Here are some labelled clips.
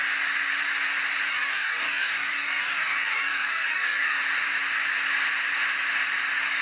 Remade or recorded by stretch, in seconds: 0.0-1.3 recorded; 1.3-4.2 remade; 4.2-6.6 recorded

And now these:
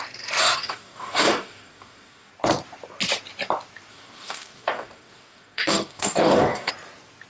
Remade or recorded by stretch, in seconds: 0.0-0.4 recorded; 0.4-2.3 remade; 2.3-3.9 recorded; 3.9-6.7 remade; 6.7-7.3 recorded

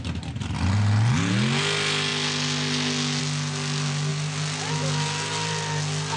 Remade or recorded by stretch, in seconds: 0.0-6.2 recorded

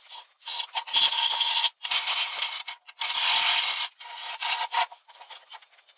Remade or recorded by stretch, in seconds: 0.0-6.0 recorded

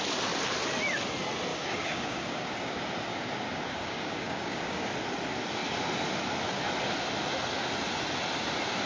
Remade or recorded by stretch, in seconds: 0.0-1.5 recorded; 1.5-2.6 remade; 2.6-3.1 recorded; 3.1-4.9 remade; 4.9-8.9 recorded

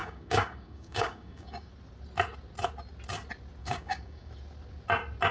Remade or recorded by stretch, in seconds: 0.0-1.7 remade; 1.7-3.6 recorded; 3.6-4.3 remade; 4.3-5.3 recorded

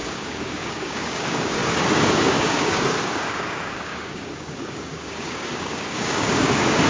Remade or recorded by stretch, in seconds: 0.0-6.9 remade